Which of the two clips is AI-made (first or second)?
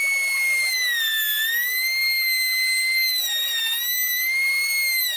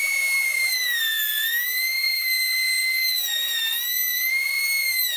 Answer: second